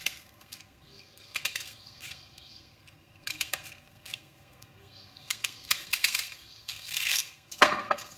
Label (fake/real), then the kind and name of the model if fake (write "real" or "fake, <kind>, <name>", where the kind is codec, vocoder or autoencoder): fake, codec, SNAC